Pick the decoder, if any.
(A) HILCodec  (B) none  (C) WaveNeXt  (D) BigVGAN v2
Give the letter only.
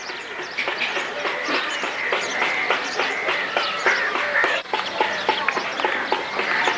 D